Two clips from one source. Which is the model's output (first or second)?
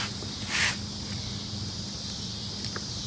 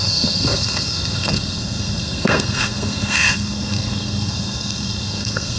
second